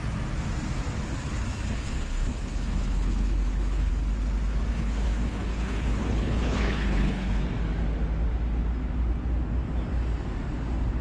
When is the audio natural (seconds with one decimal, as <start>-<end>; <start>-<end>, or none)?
0.0-1.7; 3.9-4.7; 7.4-11.0